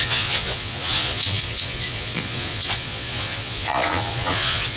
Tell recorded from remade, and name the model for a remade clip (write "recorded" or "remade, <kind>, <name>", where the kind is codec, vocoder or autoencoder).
remade, vocoder, Vocos